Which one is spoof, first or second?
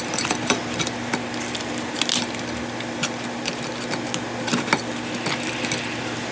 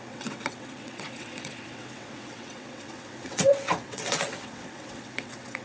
second